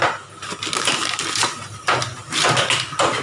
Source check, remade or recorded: recorded